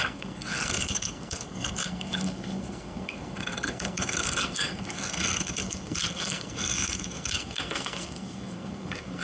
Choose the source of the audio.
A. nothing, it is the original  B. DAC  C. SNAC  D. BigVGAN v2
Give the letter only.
C